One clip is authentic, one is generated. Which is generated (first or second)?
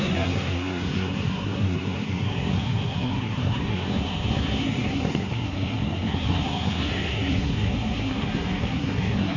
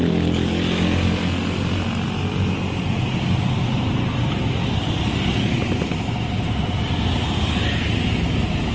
first